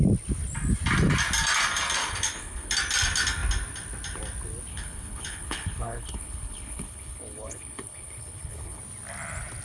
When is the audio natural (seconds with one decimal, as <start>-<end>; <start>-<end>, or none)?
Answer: 0.0-2.0; 2.7-4.7; 8.8-9.6